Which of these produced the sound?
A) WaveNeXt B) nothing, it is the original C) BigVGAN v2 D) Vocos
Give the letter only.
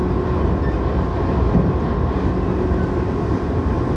B